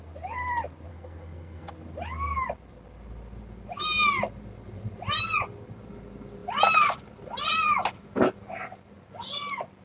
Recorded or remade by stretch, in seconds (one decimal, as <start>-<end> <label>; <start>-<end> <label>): 0.0-0.9 recorded; 0.9-1.7 remade; 1.7-9.8 recorded

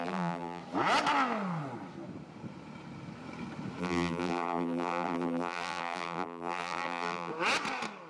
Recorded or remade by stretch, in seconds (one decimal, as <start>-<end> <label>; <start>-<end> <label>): 0.0-0.6 remade; 0.6-3.8 recorded; 3.8-7.3 remade; 7.3-8.1 recorded

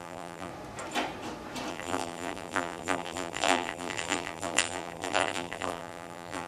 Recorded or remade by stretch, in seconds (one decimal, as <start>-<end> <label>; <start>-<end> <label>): 0.0-0.5 remade; 0.5-1.7 recorded; 1.7-6.5 remade

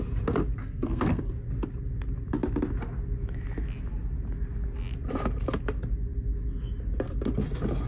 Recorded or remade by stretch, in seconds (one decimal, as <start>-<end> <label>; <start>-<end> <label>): 0.0-0.6 recorded; 0.6-1.3 remade; 1.3-7.9 recorded